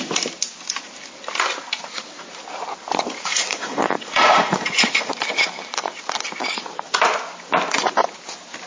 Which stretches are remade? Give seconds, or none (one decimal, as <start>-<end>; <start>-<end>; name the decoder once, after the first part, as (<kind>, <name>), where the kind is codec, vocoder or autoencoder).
3.3-5.1 (vocoder, Vocos)